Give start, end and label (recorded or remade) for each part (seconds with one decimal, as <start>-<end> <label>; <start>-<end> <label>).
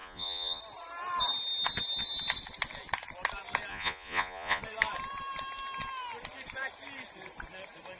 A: 0.0-0.6 remade; 0.6-3.7 recorded; 3.7-4.6 remade; 4.6-8.0 recorded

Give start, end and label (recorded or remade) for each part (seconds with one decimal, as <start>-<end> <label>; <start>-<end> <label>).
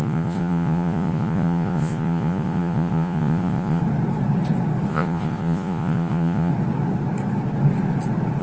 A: 0.0-3.8 remade; 3.8-4.9 recorded; 4.9-6.5 remade; 6.5-8.4 recorded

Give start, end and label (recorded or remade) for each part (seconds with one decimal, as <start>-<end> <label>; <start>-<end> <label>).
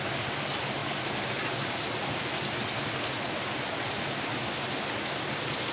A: 0.0-5.7 recorded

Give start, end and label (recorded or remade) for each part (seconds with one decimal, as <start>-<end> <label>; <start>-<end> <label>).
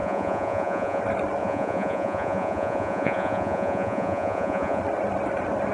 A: 0.0-1.0 remade; 1.0-1.4 recorded; 1.4-4.8 remade; 4.8-5.7 recorded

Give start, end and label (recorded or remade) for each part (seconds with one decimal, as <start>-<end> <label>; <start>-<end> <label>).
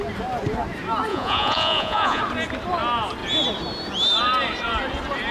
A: 0.0-1.1 recorded; 1.1-2.2 remade; 2.2-5.3 recorded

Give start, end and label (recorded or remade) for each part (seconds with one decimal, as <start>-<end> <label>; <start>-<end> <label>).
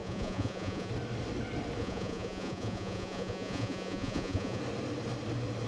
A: 0.0-0.9 remade; 0.9-1.8 recorded; 1.8-4.6 remade; 4.6-5.7 recorded